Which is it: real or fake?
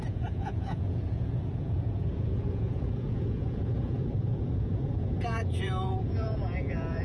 fake